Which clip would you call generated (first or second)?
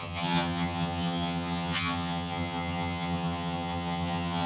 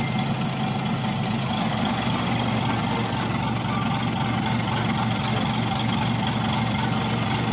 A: first